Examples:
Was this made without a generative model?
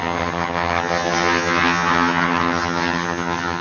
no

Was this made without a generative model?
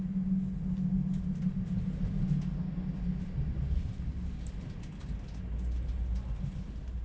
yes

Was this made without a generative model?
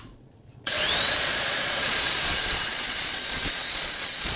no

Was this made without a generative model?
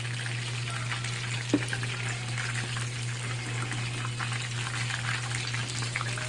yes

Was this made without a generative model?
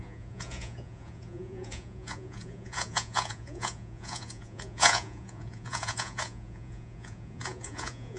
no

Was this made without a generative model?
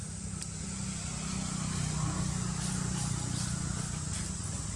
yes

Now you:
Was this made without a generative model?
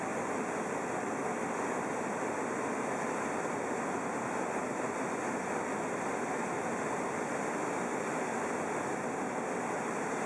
yes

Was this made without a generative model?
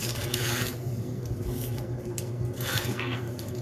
no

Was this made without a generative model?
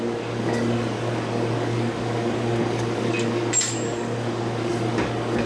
no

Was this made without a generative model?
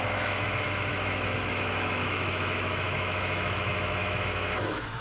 no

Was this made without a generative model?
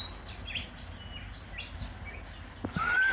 yes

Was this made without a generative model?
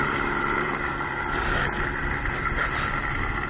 no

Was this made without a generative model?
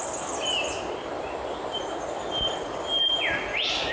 yes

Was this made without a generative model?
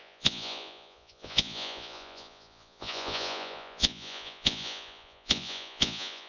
no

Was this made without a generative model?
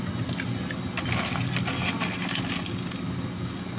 yes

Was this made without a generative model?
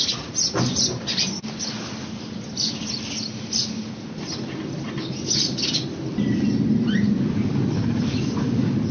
yes